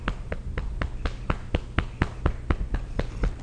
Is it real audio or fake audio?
real